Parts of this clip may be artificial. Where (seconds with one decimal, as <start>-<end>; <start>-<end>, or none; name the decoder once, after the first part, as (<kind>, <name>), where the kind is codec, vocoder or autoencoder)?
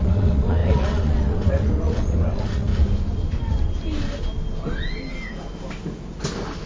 0.0-2.7 (vocoder, WaveNeXt)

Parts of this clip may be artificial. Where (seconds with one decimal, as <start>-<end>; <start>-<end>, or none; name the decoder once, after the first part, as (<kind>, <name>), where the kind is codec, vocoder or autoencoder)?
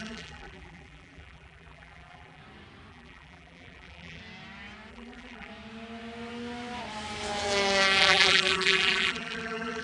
0.0-2.4 (vocoder, BigVGAN v2); 2.9-4.2; 4.9-5.5; 8.0-9.8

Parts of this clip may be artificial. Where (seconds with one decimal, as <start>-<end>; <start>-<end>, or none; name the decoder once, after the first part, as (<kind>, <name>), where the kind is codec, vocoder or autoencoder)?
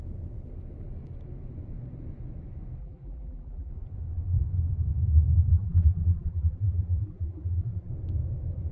2.8-3.7 (vocoder, BigVGAN v2); 5.5-7.9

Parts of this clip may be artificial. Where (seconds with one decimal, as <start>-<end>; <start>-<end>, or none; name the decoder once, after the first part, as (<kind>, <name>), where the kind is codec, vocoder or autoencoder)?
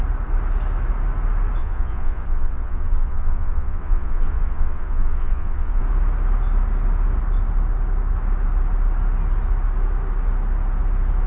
1.6-5.8 (vocoder, Vocos)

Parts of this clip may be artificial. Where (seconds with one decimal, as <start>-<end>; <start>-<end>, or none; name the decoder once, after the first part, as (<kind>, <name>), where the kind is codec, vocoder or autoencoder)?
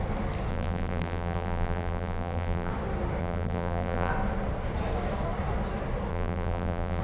0.5-2.7 (vocoder, BigVGAN v2); 3.2-4.1; 6.1-7.0